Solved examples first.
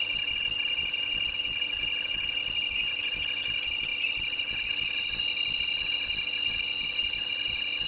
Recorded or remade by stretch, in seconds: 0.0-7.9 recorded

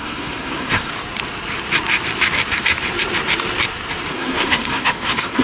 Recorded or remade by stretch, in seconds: 0.0-0.9 remade; 0.9-4.1 recorded; 4.1-5.4 remade

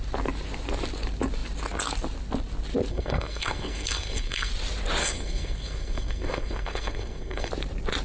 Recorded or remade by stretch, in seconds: 0.0-2.9 recorded; 2.9-4.5 remade; 4.5-5.0 recorded; 5.0-7.5 remade; 7.5-8.0 recorded

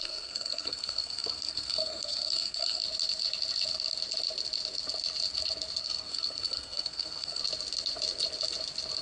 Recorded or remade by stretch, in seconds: 0.0-2.8 remade; 2.8-5.8 recorded; 5.8-7.4 remade; 7.4-9.0 recorded

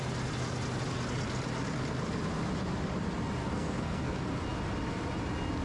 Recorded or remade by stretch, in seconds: 0.0-3.4 recorded; 3.4-4.1 remade; 4.1-5.6 recorded